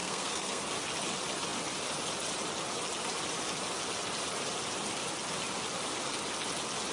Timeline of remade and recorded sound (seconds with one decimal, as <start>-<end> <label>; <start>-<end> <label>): 0.0-0.6 remade; 0.6-6.9 recorded

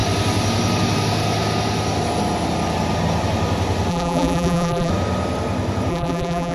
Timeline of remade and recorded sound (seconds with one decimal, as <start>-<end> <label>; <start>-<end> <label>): 0.0-3.9 recorded; 3.9-4.9 remade; 4.9-5.9 recorded; 5.9-6.5 remade

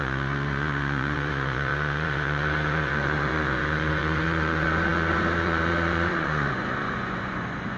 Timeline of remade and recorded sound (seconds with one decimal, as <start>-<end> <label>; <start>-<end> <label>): 0.0-7.8 remade